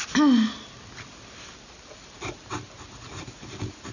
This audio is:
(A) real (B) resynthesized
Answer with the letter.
A